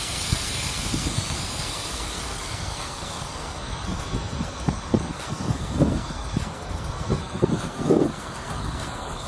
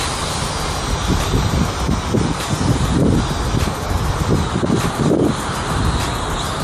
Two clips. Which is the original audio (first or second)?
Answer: second